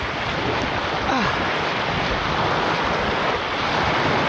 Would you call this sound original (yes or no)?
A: yes